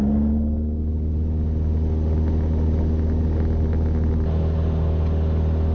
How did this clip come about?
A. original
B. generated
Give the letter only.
A